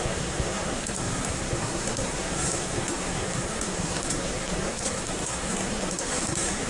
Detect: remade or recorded remade